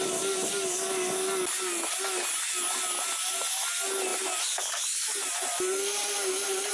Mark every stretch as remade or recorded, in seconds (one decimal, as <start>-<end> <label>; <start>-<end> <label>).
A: 0.0-6.7 recorded